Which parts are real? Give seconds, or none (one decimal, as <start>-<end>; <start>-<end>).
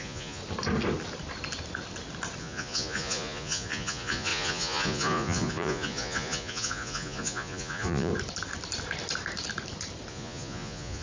0.4-2.4; 8.1-10.1